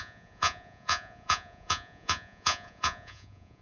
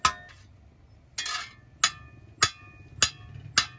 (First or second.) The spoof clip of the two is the first